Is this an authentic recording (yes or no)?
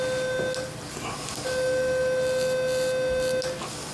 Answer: yes